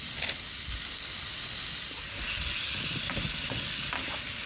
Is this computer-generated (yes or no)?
no